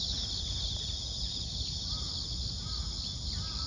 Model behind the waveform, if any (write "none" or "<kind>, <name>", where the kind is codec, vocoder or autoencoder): none